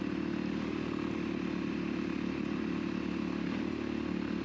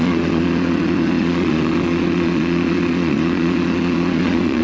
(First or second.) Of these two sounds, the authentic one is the first